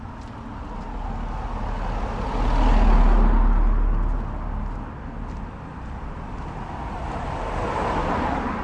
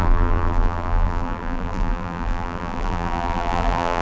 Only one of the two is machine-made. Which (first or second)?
second